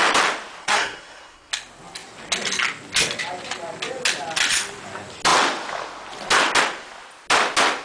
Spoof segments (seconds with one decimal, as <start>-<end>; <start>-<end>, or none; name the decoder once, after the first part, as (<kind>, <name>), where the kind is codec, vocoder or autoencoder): 0.6-1.5 (codec, SNAC)